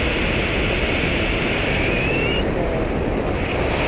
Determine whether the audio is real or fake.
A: real